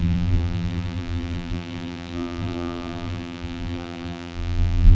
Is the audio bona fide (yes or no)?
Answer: no